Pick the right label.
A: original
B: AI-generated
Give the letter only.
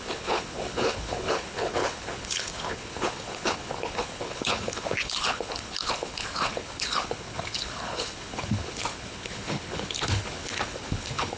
B